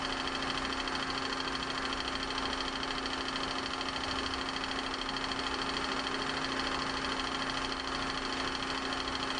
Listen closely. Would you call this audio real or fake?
real